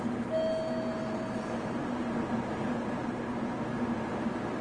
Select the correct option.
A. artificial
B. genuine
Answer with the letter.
B